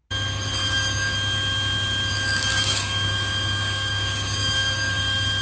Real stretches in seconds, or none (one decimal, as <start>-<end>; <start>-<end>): 0.0-0.6; 1.1-2.5

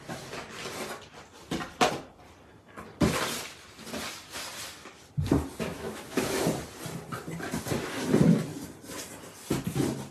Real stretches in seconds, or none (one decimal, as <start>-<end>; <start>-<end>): 0.0-5.7; 6.4-10.1

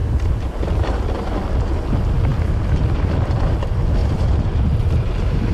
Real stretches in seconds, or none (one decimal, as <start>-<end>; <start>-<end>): 1.5-2.3; 3.5-4.0; 4.6-5.5

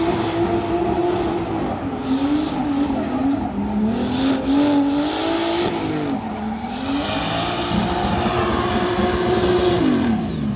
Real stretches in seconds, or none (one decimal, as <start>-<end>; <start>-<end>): 0.0-10.6